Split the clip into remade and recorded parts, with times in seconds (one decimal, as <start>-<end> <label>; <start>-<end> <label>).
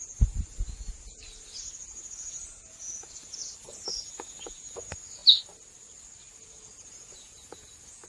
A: 0.0-5.2 remade; 5.2-6.5 recorded; 6.5-8.1 remade